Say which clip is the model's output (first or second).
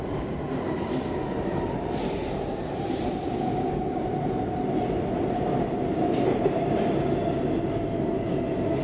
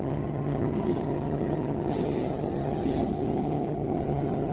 second